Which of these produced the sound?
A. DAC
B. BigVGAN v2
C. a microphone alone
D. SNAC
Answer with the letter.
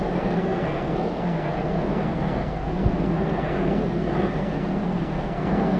D